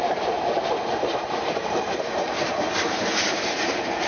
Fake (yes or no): yes